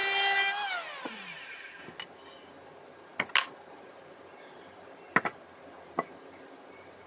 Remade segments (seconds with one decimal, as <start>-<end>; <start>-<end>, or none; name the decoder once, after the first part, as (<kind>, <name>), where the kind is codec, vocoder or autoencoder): none

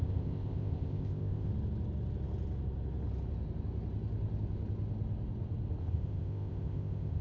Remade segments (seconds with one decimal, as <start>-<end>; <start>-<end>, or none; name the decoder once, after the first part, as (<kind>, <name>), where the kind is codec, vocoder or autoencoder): 0.0-1.5 (codec, ZipCodec); 5.8-7.2

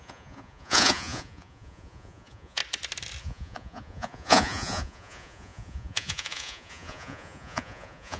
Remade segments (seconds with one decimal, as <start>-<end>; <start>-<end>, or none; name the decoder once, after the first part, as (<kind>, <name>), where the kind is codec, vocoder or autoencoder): 0.0-2.6 (vocoder, Vocos); 3.2-8.2

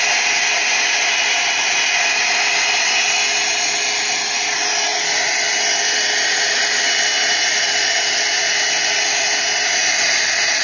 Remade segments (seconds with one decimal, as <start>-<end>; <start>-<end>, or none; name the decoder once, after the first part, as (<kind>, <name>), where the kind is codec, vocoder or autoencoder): none

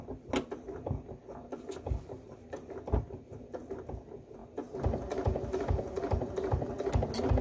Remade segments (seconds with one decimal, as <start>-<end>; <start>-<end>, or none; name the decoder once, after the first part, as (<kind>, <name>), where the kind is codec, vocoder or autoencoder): none